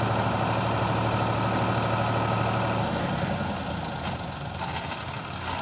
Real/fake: real